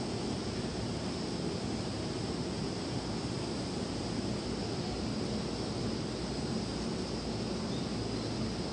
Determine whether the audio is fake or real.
real